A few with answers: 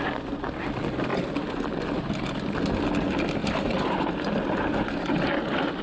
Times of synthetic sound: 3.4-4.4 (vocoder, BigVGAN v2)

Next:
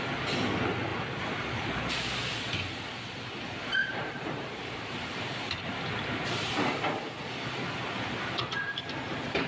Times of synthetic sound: 0.9-2.1 (vocoder, BigVGAN v2); 3.8-6.7

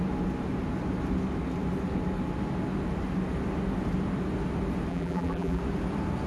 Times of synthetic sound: 4.9-5.6 (vocoder, BigVGAN v2)

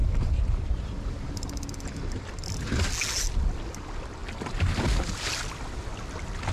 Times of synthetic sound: 0.0-1.6 (vocoder, BigVGAN v2)

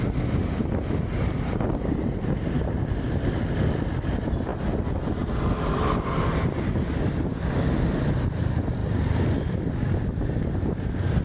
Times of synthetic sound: 8.8-10.0 (vocoder, BigVGAN v2)

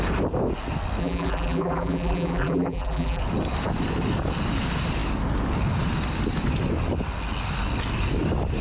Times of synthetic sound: 1.0-3.2 (vocoder, BigVGAN v2)

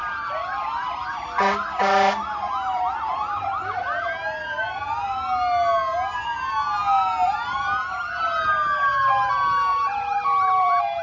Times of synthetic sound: 9.7-11.0 (vocoder, BigVGAN v2)

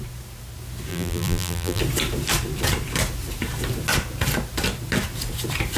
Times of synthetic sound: 0.9-1.8 (vocoder, BigVGAN v2)